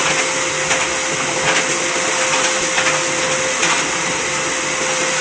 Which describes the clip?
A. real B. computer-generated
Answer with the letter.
A